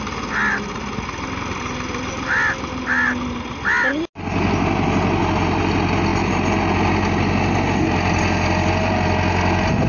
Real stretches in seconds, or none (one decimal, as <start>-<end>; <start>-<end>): 0.0-9.9